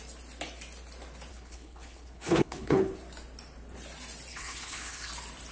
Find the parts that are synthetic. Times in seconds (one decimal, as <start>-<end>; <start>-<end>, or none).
1.3-2.9; 4.3-5.1